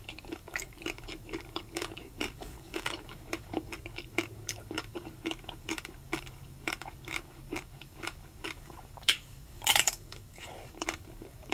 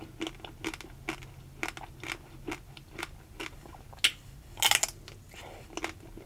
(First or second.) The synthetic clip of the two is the first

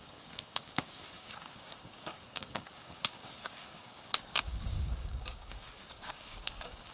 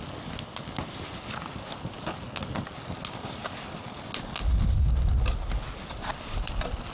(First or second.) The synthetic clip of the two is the first